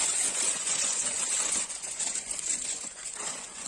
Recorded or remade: remade